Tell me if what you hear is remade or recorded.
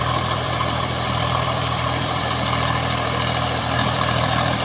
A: remade